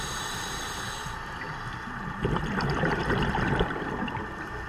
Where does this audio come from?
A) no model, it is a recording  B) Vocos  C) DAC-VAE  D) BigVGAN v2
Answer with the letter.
D